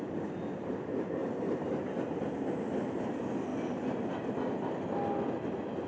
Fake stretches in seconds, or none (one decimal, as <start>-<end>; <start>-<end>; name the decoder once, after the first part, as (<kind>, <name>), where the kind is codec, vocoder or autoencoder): 1.2-2.2 (vocoder, BigVGAN v2)